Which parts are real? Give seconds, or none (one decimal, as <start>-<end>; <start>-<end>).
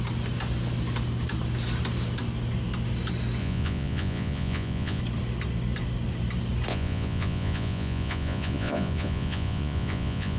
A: 0.0-3.4; 5.0-6.7